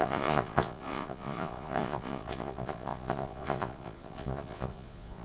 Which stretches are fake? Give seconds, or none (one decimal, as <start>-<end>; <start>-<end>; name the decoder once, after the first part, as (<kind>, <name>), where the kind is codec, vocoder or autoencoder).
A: 0.0-5.2 (vocoder, Vocos)